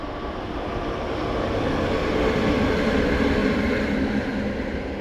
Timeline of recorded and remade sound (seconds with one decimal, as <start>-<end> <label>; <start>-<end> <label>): 0.0-3.0 recorded; 3.0-3.4 remade; 3.4-5.0 recorded